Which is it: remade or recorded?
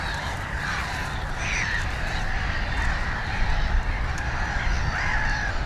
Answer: remade